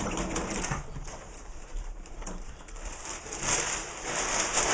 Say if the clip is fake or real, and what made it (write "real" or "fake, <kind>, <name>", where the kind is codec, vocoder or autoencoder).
fake, vocoder, BigVGAN v2